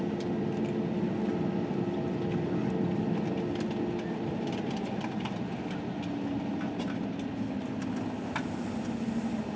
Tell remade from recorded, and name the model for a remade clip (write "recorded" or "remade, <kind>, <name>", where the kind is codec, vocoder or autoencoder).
recorded